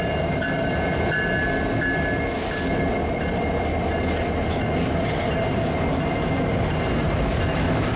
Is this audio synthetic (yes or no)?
no